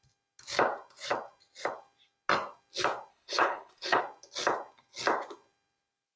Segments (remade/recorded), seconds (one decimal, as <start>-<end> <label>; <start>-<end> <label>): 0.0-3.1 recorded; 3.1-4.0 remade; 4.0-6.2 recorded